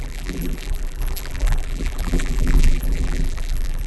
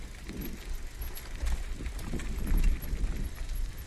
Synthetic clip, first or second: first